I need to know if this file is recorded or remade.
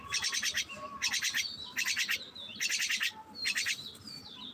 recorded